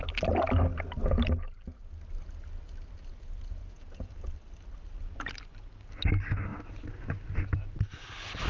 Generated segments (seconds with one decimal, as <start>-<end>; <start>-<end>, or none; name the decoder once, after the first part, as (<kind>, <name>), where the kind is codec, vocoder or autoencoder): 3.6-4.1 (vocoder, Vocos)